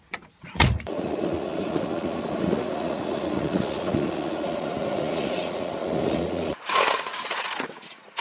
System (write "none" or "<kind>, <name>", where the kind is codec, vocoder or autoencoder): vocoder, Vocos